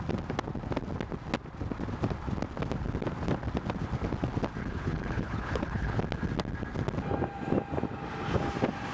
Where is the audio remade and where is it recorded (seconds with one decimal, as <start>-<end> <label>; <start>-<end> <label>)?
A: 0.0-4.6 recorded; 4.6-6.0 remade; 6.0-8.9 recorded

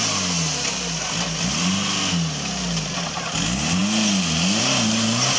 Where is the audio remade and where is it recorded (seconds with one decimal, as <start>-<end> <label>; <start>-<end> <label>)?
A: 0.0-5.4 recorded

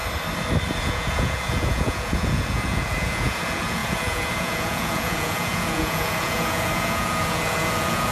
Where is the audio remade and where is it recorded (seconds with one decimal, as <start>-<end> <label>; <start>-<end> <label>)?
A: 0.0-0.8 recorded; 0.8-8.1 remade

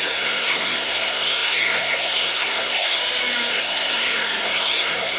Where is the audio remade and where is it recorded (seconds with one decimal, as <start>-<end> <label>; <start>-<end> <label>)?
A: 0.0-3.0 remade; 3.0-3.5 recorded; 3.5-5.2 remade

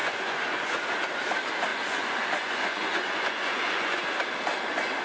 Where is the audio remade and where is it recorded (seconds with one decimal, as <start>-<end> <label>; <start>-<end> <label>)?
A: 0.0-0.8 remade; 0.8-1.7 recorded; 1.7-4.0 remade; 4.0-5.0 recorded

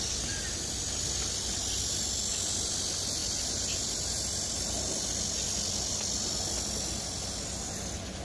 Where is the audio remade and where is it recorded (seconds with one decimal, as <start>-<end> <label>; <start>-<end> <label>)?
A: 0.0-8.2 recorded

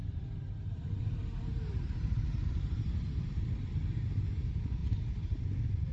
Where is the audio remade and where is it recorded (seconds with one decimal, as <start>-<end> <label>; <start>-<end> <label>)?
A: 0.0-3.5 remade; 3.5-4.8 recorded; 4.8-5.4 remade; 5.4-5.9 recorded

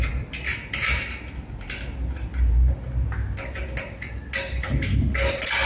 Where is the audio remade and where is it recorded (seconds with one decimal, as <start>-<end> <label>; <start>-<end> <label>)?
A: 0.0-5.7 recorded